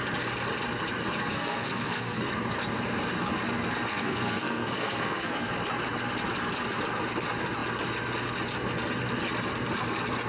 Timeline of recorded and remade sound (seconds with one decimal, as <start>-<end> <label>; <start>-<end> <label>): 0.0-1.3 recorded; 1.3-2.3 remade; 2.3-3.9 recorded; 3.9-5.5 remade; 5.5-10.3 recorded